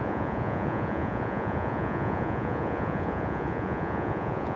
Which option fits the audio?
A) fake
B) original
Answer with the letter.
A